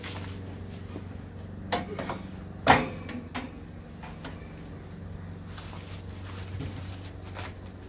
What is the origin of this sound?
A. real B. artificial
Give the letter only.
A